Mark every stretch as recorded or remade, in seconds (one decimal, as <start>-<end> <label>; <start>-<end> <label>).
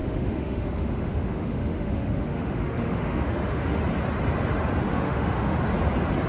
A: 0.0-3.8 remade; 3.8-4.9 recorded; 4.9-5.6 remade; 5.6-6.3 recorded